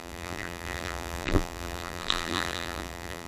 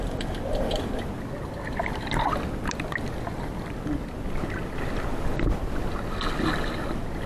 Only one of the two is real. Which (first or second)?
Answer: second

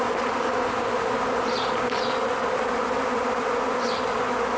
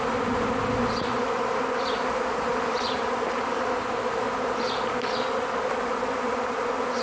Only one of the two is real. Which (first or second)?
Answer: first